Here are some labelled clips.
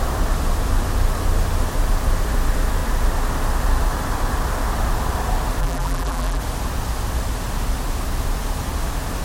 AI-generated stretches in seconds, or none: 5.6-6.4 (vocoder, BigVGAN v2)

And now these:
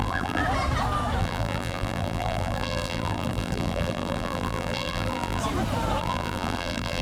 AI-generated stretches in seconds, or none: 0.0-0.4 (vocoder, BigVGAN v2); 1.2-5.4; 6.0-7.0

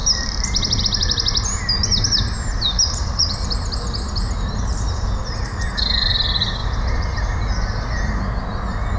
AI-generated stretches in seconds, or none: 0.0-0.8 (vocoder, BigVGAN v2); 2.5-4.7; 6.6-7.5

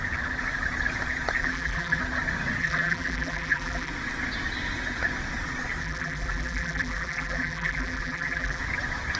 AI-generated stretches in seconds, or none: 1.4-2.0 (vocoder, BigVGAN v2); 2.6-3.9; 5.8-8.6

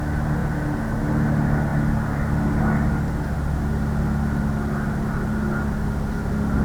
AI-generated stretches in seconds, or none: none